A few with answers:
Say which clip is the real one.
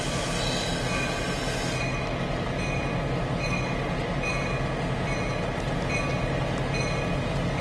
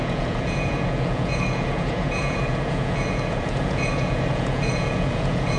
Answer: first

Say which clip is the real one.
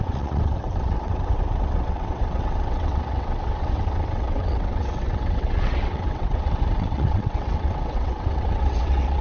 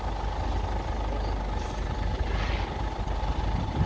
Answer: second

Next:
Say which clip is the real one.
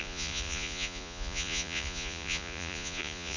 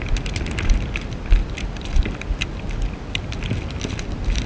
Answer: second